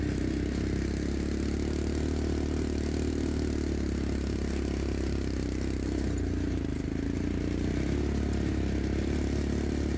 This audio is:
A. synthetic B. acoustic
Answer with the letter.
B